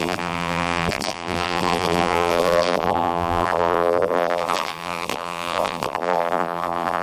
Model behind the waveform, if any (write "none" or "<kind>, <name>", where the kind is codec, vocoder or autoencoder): vocoder, BigVGAN v2